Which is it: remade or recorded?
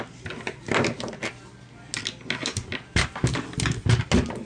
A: recorded